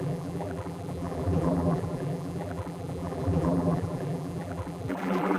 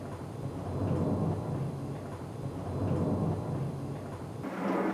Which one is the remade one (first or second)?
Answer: first